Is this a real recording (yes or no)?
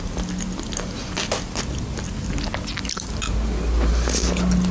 yes